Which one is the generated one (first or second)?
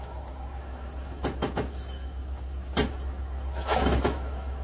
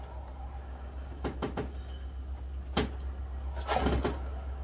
first